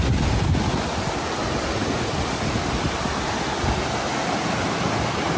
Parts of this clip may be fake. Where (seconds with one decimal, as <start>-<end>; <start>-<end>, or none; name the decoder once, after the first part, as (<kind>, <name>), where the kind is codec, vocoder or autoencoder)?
none